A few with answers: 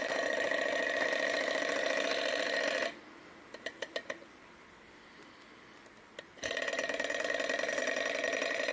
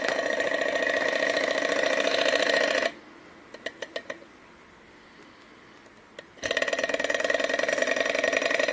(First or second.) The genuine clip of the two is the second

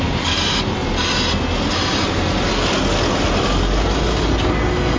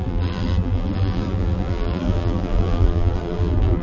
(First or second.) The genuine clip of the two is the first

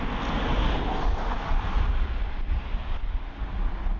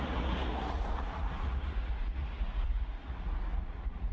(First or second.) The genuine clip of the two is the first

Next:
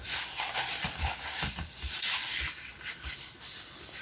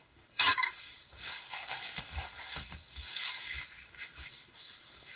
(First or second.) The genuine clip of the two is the first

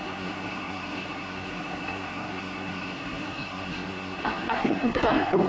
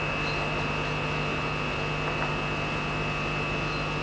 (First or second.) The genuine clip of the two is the second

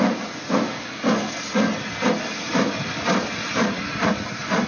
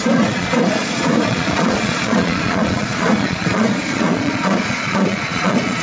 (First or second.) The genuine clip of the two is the first